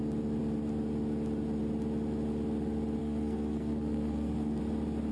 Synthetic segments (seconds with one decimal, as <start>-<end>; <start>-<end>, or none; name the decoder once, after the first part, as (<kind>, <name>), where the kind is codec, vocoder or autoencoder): 3.0-4.6 (codec, SNAC)

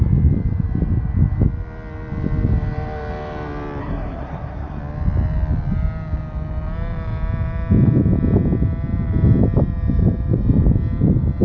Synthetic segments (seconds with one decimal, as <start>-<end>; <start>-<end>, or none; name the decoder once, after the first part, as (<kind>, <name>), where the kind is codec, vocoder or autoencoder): 3.8-4.8 (codec, SNAC)

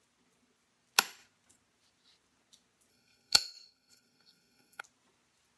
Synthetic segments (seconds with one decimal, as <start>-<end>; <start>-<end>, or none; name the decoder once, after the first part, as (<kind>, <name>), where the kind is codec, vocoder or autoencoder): 2.9-4.8 (codec, SNAC)

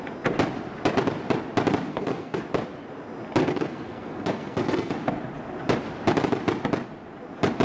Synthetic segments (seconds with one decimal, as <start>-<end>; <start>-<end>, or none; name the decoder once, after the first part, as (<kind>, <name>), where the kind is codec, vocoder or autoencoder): 1.9-2.4 (codec, SNAC); 3.4-4.9

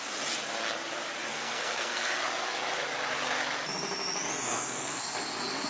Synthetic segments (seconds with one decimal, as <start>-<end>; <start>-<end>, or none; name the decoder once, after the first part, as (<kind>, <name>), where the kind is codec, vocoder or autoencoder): 1.3-2.1 (codec, SNAC); 4.5-5.0

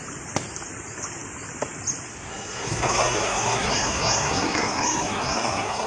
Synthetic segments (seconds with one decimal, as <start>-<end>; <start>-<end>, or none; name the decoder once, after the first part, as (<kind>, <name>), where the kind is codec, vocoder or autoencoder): 2.3-5.9 (codec, SNAC)